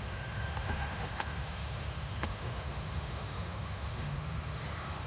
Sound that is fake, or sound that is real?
fake